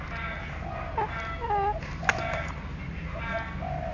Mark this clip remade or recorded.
recorded